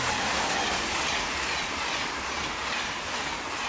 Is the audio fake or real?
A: real